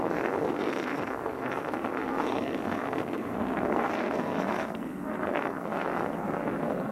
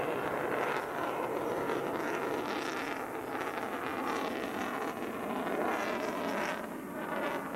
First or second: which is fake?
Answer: first